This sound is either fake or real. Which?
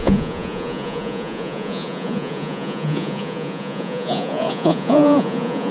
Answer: fake